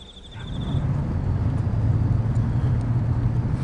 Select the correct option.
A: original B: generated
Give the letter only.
A